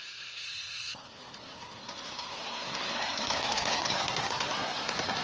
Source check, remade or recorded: remade